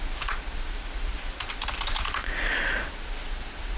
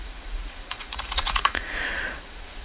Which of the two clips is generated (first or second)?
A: second